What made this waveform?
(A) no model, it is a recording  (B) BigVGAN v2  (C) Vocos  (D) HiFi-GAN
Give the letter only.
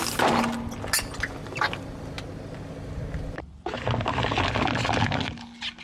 A